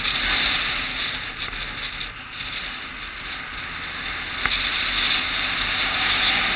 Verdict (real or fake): real